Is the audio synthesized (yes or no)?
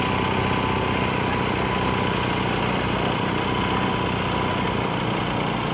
no